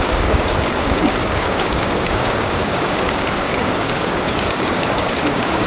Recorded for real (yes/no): no